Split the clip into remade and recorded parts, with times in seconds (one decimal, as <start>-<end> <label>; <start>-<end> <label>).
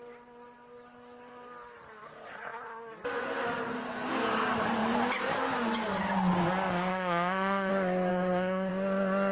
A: 0.0-6.9 recorded; 6.9-7.7 remade; 7.7-8.1 recorded; 8.1-8.7 remade; 8.7-9.3 recorded